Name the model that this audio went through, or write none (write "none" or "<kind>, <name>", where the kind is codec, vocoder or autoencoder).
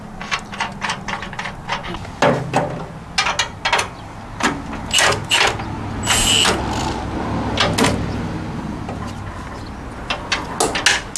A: none